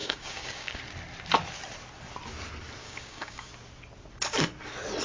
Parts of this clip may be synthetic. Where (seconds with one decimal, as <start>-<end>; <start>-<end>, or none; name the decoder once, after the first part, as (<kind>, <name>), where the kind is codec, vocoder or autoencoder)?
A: 0.0-0.8 (codec, DAC); 2.8-3.5